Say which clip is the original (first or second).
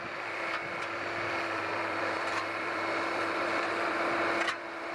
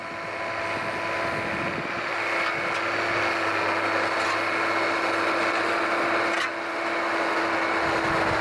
second